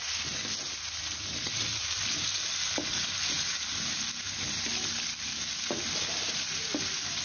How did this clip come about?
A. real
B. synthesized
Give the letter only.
A